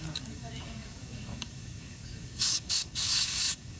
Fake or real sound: fake